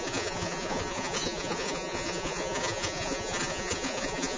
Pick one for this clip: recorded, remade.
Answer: remade